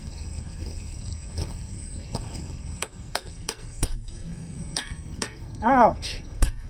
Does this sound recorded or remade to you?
remade